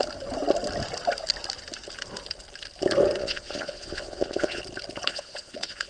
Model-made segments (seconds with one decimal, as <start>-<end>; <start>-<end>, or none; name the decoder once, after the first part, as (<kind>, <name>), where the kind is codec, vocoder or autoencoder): 3.2-4.6 (vocoder, Vocos); 5.1-5.9